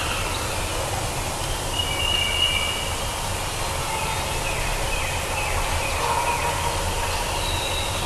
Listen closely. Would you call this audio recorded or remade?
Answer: recorded